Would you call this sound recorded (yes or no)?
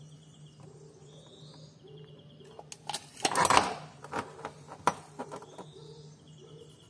yes